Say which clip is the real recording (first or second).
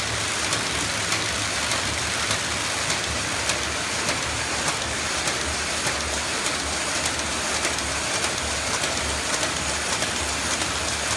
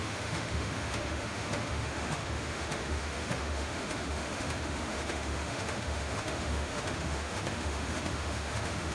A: first